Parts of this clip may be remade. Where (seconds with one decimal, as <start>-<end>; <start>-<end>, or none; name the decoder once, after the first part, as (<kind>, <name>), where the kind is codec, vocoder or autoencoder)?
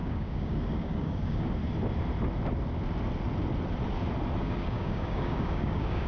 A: 0.0-1.6 (codec, DAC); 4.4-6.1